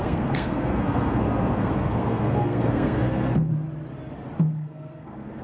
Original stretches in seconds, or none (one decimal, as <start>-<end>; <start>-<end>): 3.5-4.4